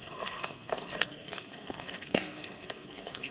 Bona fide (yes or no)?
no